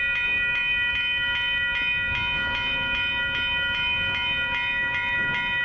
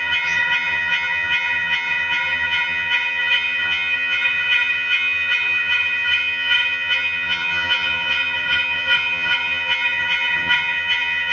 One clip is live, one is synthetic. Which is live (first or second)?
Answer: first